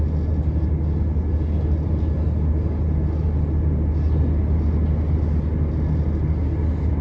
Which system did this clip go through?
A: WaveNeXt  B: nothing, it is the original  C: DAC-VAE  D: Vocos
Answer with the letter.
B